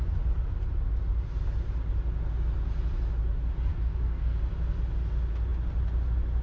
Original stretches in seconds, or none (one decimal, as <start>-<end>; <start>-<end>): 0.0-3.7; 4.4-6.4

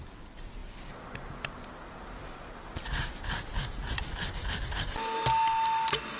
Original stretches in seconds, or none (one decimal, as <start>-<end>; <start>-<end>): 0.0-6.2

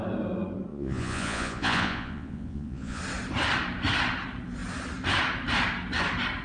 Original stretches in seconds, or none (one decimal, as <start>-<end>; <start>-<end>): 0.0-0.7; 3.0-6.4